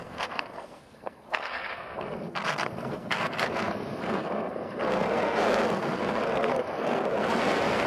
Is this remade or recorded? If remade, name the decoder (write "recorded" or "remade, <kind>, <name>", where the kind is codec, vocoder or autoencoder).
remade, codec, SNAC